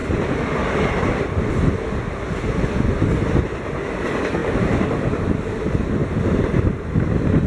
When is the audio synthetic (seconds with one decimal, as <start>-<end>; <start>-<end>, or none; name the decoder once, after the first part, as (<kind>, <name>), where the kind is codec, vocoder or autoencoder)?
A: none